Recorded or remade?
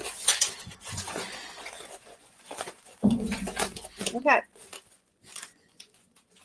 remade